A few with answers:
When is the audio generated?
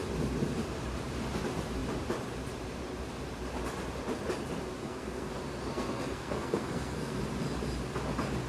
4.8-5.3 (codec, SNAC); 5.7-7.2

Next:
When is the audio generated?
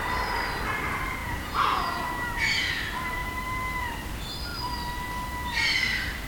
1.2-2.0 (vocoder, Vocos)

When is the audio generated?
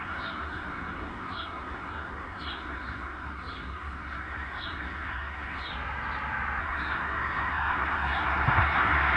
0.0-5.7 (codec, SNAC); 6.6-9.2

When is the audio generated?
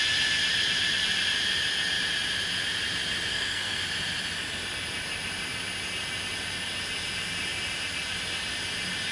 3.3-3.8 (codec, SNAC)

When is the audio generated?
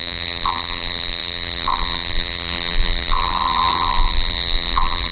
0.0-5.1 (vocoder, BigVGAN v2)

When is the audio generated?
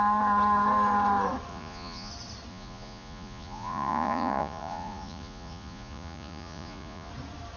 1.5-2.1 (vocoder, Vocos); 2.5-7.1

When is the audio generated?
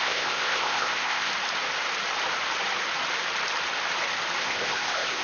0.0-1.3 (codec, ZipCodec); 4.4-5.2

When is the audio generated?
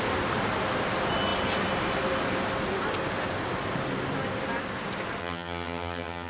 5.2-6.3 (vocoder, HiFi-GAN)